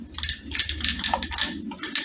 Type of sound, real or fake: real